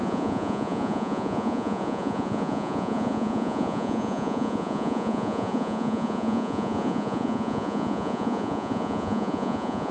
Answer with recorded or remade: remade